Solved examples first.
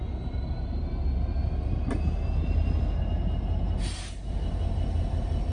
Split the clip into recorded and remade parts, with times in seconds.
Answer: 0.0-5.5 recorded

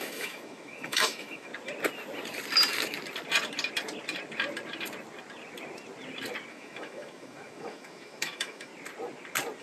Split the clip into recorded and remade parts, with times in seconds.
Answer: 0.0-1.5 remade; 1.5-6.5 recorded; 6.5-8.7 remade; 8.7-9.6 recorded